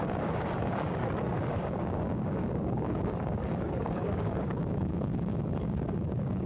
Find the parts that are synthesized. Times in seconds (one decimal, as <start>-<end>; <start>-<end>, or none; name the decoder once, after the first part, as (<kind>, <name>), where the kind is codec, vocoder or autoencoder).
0.0-1.0 (codec, DAC); 1.5-6.5